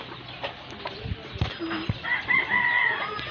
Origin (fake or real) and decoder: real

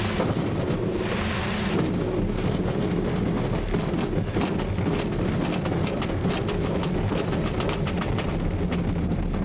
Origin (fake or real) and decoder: real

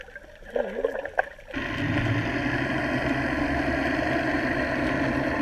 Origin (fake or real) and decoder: real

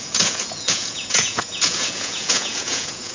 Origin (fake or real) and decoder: fake, vocoder, Vocos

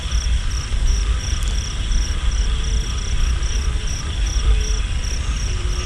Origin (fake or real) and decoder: real